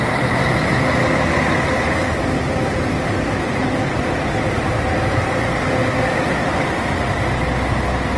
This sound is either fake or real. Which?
real